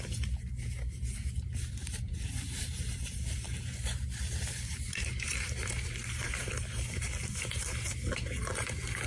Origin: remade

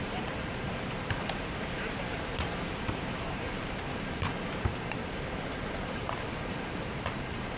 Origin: remade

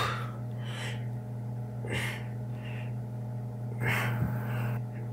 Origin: recorded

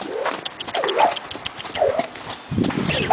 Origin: recorded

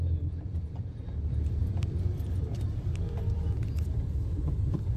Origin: remade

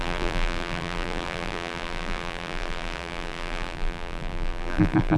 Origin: remade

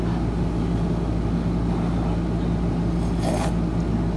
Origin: recorded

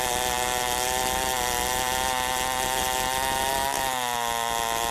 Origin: recorded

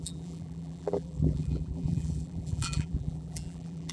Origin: remade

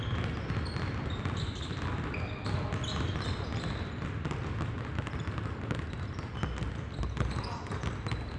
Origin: recorded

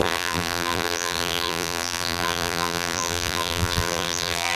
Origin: remade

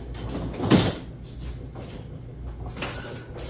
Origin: recorded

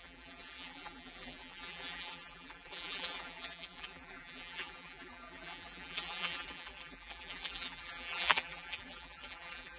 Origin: remade